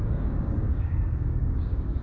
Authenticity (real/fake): fake